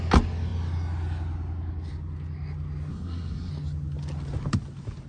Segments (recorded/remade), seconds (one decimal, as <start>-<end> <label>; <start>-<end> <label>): 0.0-2.9 recorded; 2.9-3.5 remade; 3.5-5.1 recorded